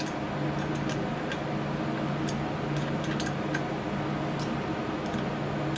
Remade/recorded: recorded